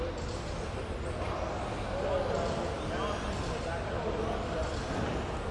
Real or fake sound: real